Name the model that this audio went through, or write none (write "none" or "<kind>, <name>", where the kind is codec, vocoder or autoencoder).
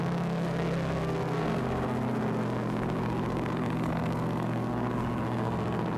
codec, SNAC